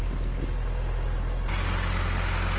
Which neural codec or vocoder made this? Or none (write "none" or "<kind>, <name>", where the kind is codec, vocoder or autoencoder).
none